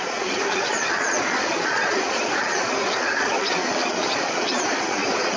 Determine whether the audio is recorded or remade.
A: remade